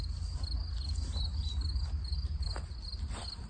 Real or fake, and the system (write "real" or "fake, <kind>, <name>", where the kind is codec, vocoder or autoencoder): real